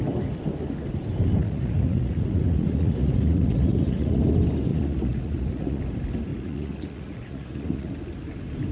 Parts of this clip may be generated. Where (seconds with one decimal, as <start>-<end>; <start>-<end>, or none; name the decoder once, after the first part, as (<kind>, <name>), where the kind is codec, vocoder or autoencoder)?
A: 1.4-4.2 (vocoder, Vocos); 4.7-5.8; 6.3-7.9